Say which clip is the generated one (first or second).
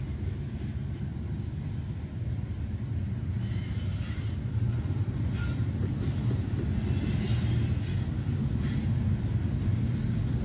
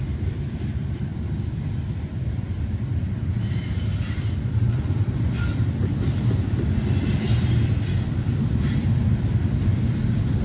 second